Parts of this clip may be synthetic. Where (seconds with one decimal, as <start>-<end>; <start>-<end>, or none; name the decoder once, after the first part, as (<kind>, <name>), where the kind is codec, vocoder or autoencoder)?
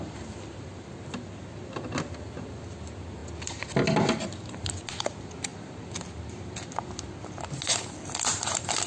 none